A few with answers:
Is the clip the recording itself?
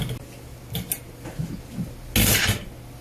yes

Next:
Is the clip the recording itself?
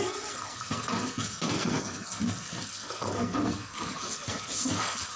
no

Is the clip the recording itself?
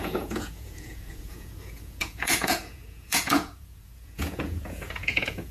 no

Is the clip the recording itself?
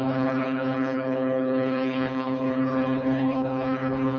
no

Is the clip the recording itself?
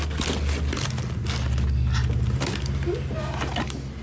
yes